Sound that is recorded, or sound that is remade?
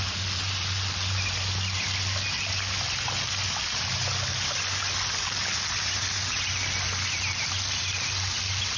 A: recorded